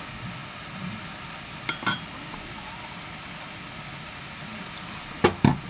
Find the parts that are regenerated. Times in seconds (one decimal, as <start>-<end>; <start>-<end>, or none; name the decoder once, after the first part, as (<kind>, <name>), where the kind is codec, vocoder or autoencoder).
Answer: none